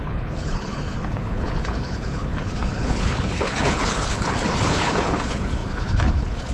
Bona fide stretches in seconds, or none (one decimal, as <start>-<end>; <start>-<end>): none